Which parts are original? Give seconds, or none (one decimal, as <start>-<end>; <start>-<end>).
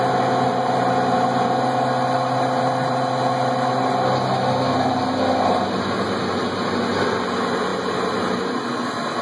0.0-9.2